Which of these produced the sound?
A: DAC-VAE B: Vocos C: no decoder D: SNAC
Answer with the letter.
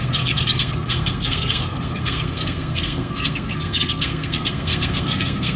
D